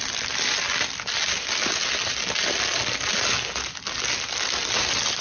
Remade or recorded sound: recorded